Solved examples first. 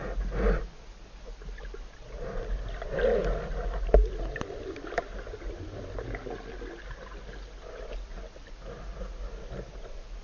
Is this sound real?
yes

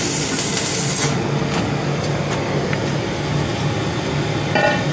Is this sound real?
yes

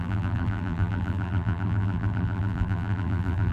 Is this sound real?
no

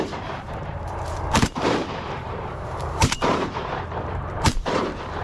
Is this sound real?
no